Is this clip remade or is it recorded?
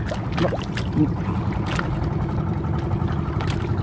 recorded